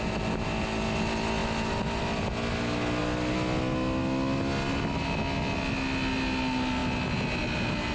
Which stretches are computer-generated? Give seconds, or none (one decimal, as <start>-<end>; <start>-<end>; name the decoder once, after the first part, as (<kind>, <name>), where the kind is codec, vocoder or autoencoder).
none